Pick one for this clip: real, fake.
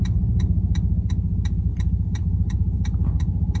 real